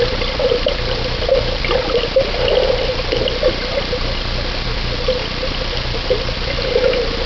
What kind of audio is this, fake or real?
real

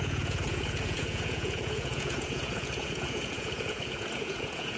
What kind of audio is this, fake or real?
fake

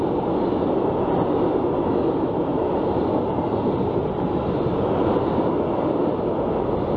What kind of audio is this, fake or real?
real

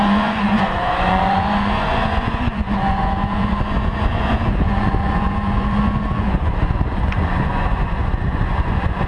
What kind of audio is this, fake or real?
fake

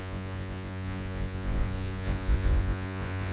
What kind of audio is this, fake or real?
fake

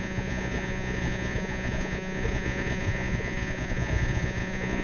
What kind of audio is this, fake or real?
fake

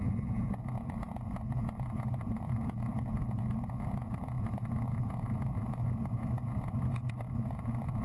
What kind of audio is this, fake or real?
fake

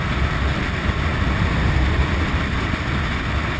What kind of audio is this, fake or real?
real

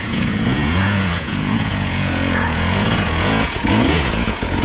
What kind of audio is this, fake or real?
fake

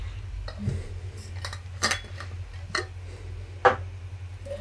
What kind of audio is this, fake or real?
real